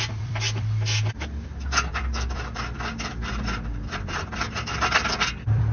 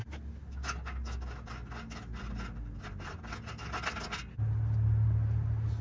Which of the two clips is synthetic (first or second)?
first